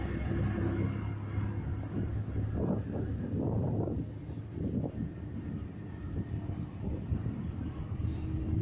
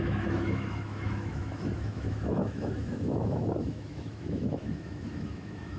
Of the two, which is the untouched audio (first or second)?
first